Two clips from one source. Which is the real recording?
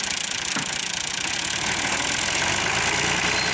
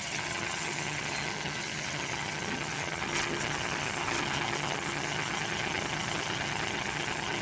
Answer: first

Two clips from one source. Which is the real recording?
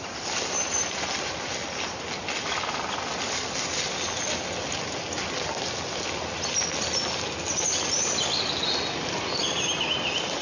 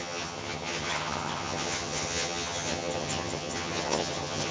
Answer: first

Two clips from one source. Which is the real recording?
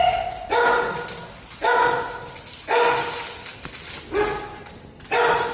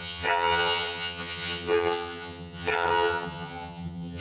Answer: first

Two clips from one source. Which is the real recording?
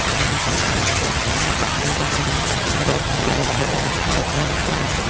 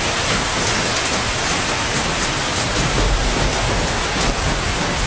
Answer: second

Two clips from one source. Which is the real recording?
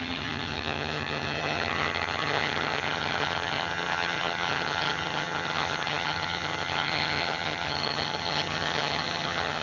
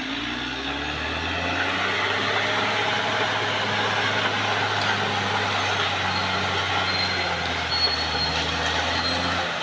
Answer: second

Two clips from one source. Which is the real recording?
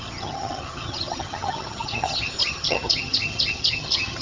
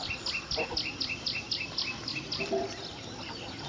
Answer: second